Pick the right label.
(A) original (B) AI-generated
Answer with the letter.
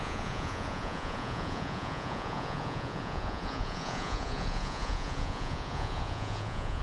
B